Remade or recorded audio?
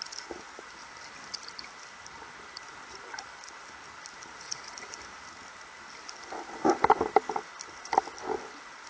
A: recorded